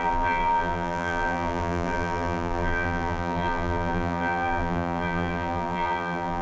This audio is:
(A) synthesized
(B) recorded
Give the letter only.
A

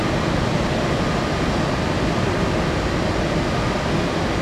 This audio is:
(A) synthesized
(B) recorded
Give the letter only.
B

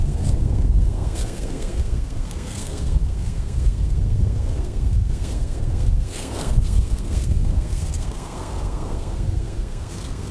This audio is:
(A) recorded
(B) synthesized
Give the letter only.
B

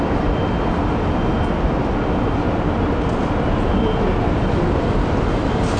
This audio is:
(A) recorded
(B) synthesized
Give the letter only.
A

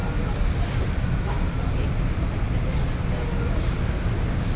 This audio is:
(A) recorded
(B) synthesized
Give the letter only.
A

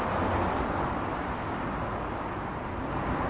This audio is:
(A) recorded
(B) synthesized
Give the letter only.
A